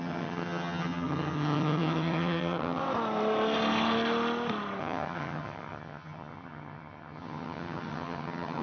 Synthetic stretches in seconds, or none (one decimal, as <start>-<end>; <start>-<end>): 0.0-2.8; 4.8-8.6